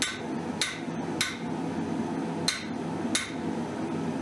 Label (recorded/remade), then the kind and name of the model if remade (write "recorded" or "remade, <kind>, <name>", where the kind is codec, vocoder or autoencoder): recorded